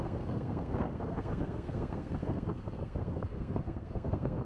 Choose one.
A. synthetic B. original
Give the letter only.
A